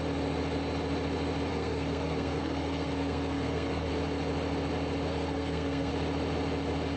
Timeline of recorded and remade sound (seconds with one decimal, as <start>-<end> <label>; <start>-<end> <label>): 0.0-1.5 recorded; 1.5-3.9 remade; 3.9-5.1 recorded; 5.1-5.9 remade; 5.9-7.0 recorded